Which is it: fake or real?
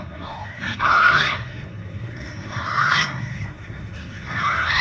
fake